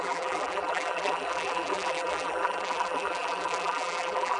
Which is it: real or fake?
fake